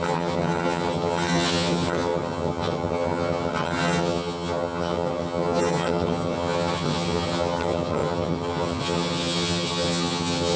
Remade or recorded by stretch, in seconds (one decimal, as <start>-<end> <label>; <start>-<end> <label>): 0.0-10.6 remade